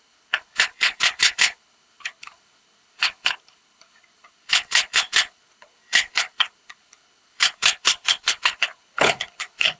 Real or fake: fake